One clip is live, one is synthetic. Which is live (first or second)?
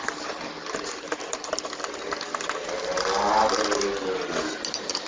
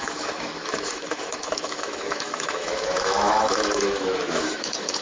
first